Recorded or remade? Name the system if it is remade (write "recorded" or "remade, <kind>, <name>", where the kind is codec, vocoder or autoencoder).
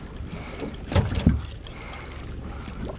recorded